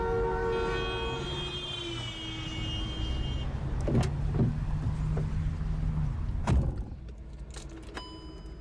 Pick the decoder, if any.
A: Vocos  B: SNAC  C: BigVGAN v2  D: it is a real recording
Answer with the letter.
D